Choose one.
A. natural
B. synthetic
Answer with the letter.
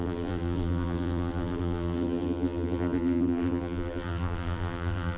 B